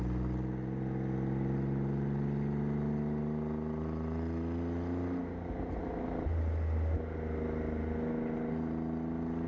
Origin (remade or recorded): recorded